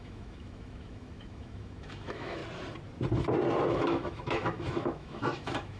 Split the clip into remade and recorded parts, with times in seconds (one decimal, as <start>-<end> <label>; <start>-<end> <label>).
0.0-2.4 remade; 2.4-3.7 recorded; 3.7-5.8 remade